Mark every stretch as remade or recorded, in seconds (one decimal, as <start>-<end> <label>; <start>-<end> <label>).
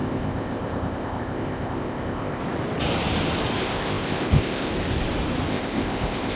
0.0-2.4 remade; 2.4-3.6 recorded; 3.6-4.7 remade; 4.7-5.5 recorded; 5.5-6.4 remade